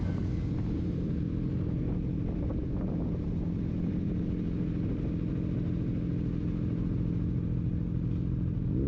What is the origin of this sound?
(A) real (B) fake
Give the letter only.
A